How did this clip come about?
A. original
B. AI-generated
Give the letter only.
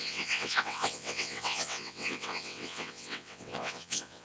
B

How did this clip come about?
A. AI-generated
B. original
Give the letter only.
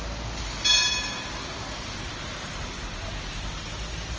B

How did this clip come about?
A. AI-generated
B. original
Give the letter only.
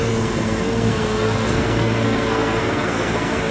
A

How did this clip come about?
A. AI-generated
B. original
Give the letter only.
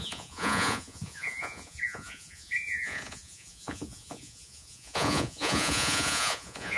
A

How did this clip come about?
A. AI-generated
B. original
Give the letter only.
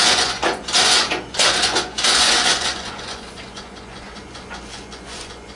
A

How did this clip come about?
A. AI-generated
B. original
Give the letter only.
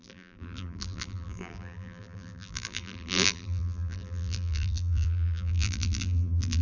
A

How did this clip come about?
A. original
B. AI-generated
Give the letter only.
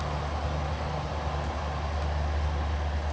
A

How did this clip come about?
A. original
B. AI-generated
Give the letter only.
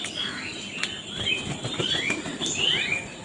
A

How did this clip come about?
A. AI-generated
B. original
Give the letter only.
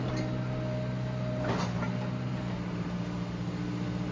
B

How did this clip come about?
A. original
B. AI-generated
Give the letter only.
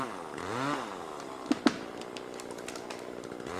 A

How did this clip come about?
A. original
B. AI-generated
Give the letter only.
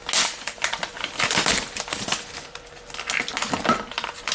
A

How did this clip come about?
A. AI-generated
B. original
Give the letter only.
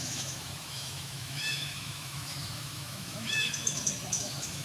A